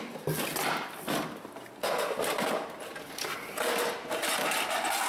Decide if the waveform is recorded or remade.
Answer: recorded